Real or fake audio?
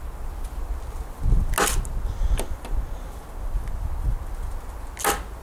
real